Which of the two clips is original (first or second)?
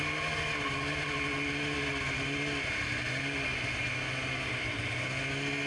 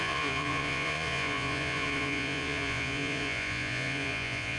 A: first